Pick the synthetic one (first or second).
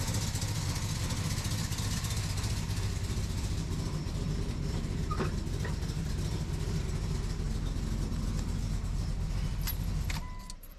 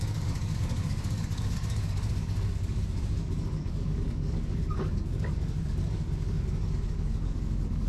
second